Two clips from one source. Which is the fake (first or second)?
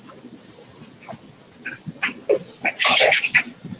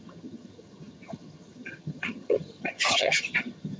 second